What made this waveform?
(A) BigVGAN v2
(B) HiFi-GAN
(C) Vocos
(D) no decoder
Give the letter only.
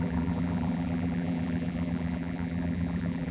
A